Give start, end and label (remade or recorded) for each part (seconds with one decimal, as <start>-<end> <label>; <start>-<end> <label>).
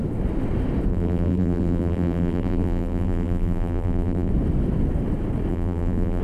0.0-0.9 recorded; 0.9-4.3 remade; 4.3-5.5 recorded; 5.5-6.2 remade